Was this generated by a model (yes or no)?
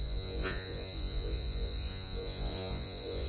yes